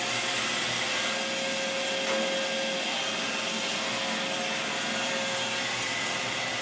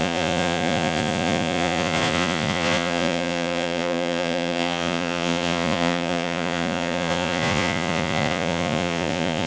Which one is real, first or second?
first